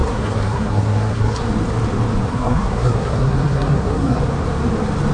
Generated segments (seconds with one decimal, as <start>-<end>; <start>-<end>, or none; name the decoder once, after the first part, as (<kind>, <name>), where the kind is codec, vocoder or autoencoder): 0.0-1.4 (codec, SNAC); 2.3-4.2